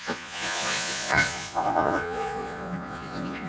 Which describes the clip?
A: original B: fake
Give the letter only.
B